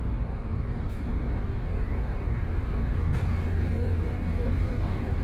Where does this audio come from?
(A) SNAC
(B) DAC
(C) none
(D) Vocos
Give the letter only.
B